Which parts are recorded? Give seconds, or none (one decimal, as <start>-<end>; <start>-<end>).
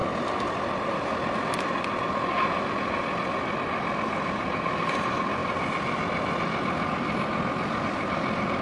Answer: 0.0-8.6